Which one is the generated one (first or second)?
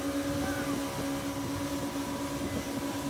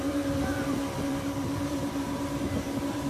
second